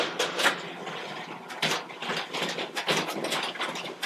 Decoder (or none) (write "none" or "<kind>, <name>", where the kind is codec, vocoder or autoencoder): none